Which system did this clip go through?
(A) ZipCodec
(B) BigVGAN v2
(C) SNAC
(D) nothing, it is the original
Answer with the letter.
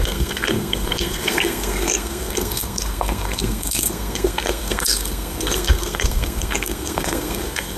C